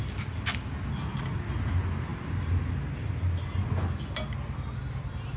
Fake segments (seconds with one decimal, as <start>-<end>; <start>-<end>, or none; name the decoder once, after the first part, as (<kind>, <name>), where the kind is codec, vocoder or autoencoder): none